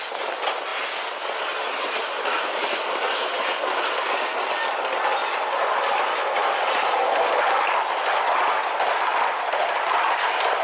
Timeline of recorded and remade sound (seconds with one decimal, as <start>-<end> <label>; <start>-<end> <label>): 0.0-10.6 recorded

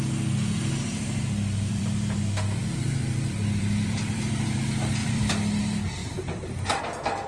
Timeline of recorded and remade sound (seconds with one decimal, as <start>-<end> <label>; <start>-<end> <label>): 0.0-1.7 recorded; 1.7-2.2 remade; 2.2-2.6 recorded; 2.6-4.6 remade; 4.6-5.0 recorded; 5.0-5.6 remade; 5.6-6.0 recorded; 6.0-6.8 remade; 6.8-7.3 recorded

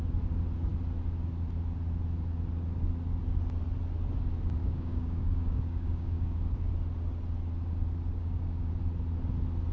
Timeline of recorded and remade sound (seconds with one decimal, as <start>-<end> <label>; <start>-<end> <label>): 0.0-4.6 recorded; 4.6-6.7 remade; 6.7-8.1 recorded; 8.1-8.7 remade; 8.7-9.7 recorded

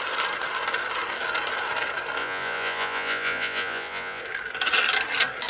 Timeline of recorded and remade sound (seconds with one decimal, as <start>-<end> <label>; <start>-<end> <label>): 0.0-2.2 recorded; 2.2-4.2 remade; 4.2-5.5 recorded

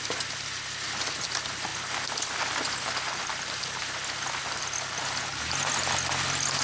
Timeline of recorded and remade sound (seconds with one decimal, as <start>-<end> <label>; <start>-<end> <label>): 0.0-6.6 recorded

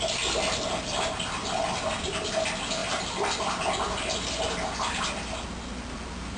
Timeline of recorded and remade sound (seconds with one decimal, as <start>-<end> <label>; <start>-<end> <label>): 0.0-6.4 recorded